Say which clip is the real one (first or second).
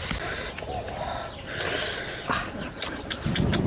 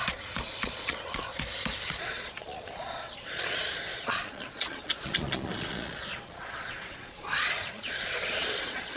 first